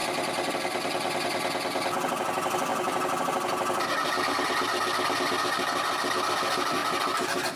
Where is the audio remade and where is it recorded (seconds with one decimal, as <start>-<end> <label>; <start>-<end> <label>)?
0.0-7.6 recorded